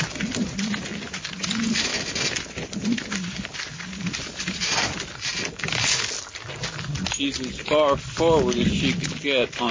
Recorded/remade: recorded